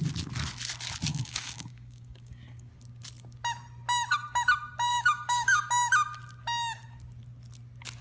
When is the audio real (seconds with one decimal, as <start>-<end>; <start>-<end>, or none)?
0.0-1.1; 2.7-4.9; 5.7-8.0